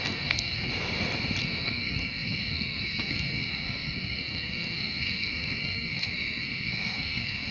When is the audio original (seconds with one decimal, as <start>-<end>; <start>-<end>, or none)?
0.7-1.4